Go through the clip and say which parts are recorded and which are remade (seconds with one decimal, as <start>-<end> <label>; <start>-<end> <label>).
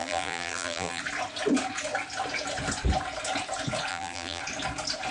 0.0-1.0 remade; 1.0-3.9 recorded; 3.9-4.4 remade; 4.4-5.1 recorded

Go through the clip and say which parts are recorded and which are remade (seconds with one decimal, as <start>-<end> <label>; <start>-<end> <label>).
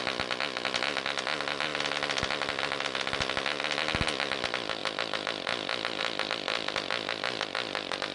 0.0-8.1 recorded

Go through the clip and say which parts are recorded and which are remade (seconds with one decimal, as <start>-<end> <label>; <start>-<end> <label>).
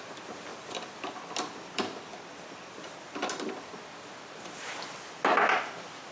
0.0-0.5 recorded; 0.5-3.5 remade; 3.5-6.1 recorded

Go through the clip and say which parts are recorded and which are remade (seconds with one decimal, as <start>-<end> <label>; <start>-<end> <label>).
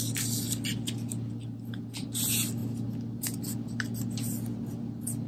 0.0-5.3 recorded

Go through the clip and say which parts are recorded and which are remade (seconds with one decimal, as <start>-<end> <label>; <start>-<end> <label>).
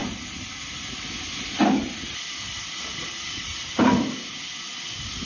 0.0-2.9 recorded; 2.9-5.3 remade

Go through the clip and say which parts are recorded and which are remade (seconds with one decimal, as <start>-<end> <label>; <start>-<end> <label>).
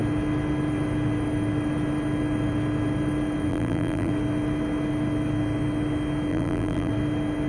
0.0-3.5 recorded; 3.5-4.1 remade; 4.1-6.3 recorded; 6.3-6.9 remade; 6.9-7.5 recorded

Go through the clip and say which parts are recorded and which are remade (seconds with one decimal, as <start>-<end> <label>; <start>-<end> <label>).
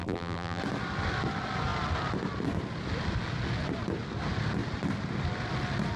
0.0-0.6 remade; 0.6-6.0 recorded